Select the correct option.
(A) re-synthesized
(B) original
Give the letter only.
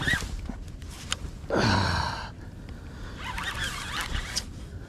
B